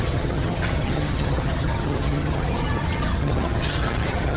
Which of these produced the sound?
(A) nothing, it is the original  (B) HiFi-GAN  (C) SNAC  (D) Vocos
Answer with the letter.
B